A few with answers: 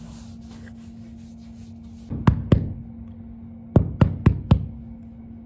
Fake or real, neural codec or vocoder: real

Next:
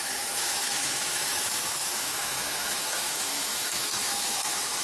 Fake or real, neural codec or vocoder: fake, autoencoder, DAC-VAE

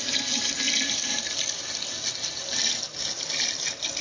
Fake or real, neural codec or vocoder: real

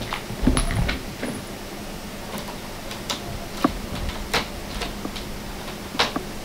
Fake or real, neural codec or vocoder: real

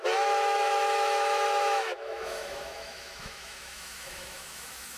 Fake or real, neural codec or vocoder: fake, autoencoder, DAC-VAE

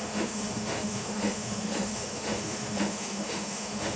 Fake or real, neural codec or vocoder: fake, autoencoder, DAC-VAE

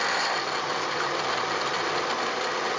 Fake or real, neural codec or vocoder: real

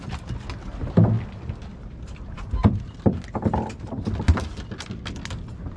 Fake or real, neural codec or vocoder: real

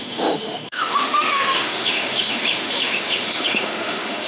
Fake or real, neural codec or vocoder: fake, autoencoder, DAC-VAE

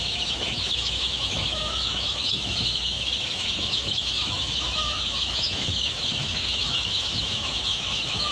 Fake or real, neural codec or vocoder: fake, autoencoder, DAC-VAE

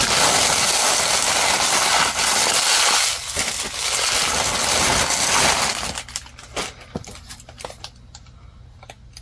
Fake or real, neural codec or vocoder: real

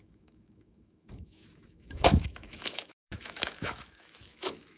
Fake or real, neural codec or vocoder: fake, autoencoder, DAC-VAE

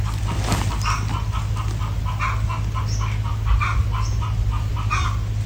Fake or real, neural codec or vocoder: real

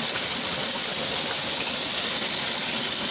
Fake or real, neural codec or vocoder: real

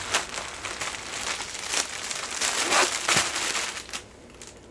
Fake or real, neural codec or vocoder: real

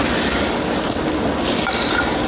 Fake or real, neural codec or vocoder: real